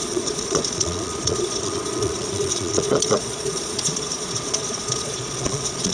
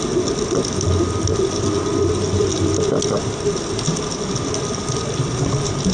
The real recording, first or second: second